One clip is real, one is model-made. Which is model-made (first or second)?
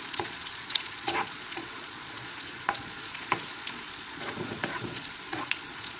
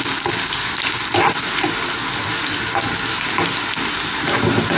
first